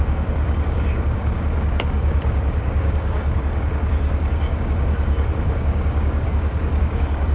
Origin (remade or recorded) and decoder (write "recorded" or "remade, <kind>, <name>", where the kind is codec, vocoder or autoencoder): remade, codec, DAC